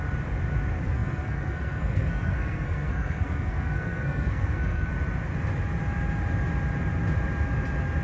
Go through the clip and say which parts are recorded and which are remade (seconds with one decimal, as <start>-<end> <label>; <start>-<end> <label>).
0.0-0.8 recorded; 0.8-4.9 remade; 4.9-8.0 recorded